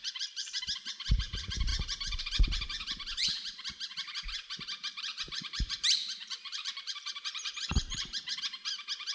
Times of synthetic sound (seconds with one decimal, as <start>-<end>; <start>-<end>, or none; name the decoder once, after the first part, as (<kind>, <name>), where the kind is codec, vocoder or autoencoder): 0.0-0.6 (vocoder, BigVGAN v2); 1.7-2.2; 4.8-8.4